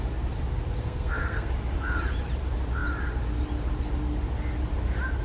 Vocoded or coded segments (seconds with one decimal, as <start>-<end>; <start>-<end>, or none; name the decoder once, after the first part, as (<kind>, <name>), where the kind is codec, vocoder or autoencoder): 0.8-1.5 (codec, SNAC)